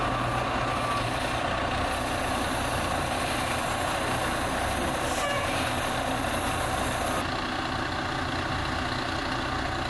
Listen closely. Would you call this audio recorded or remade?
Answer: recorded